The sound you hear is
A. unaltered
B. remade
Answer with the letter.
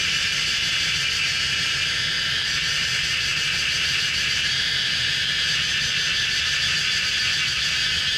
A